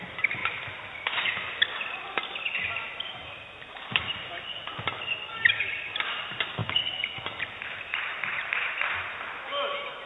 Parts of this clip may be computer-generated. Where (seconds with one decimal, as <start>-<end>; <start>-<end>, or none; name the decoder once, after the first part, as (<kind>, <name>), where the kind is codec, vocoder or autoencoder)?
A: none

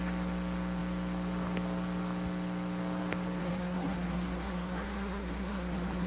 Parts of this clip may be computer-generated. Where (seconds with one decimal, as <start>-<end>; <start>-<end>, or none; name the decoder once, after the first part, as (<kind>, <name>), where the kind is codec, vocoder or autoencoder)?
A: 3.4-6.1 (codec, SNAC)

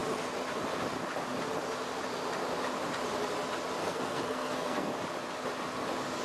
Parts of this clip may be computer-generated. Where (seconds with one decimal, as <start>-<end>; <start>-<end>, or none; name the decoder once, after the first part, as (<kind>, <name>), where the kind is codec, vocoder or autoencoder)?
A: 3.8-4.9 (codec, SNAC)